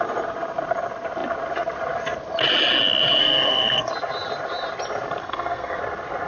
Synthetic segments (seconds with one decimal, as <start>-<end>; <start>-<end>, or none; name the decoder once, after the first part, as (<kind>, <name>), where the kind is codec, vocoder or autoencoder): 3.2-3.9 (codec, SNAC); 5.2-5.8